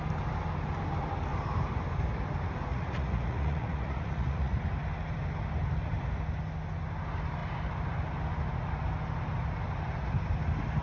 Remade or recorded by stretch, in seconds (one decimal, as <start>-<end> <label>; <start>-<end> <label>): 0.0-2.7 recorded; 2.7-4.6 remade; 4.6-10.8 recorded